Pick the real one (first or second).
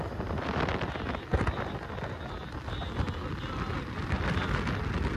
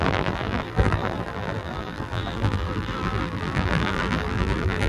first